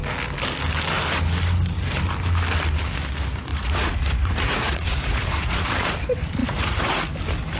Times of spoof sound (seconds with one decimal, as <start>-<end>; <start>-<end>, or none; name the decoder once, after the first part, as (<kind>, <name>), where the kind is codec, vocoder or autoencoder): 3.5-5.7 (vocoder, Vocos); 6.4-7.0